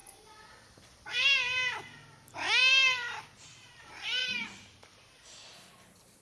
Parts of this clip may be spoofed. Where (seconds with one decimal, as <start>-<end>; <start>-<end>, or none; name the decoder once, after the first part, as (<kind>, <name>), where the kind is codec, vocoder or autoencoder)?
2.6-3.7 (vocoder, BigVGAN v2); 4.2-5.1